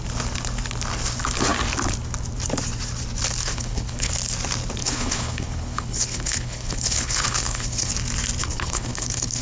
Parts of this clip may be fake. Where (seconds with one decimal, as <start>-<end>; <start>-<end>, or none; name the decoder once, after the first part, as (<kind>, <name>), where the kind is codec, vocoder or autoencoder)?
3.4-4.1 (codec, HILCodec); 4.8-7.9; 8.4-9.4